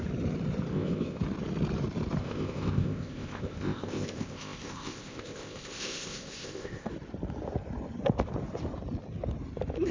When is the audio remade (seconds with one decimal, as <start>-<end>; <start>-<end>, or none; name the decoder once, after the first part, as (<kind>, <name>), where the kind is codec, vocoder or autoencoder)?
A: 0.7-1.2 (codec, ZipCodec); 2.2-6.9